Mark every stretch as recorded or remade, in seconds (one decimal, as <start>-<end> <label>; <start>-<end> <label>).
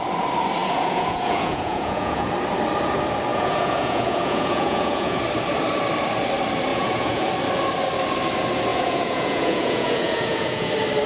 0.0-0.6 recorded; 0.6-2.3 remade; 2.3-3.3 recorded; 3.3-5.2 remade; 5.2-6.7 recorded; 6.7-7.3 remade; 7.3-8.7 recorded; 8.7-10.7 remade; 10.7-11.1 recorded